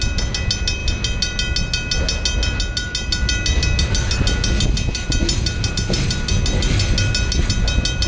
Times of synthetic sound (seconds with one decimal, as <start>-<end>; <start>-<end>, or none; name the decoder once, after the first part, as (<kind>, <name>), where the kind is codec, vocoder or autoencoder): none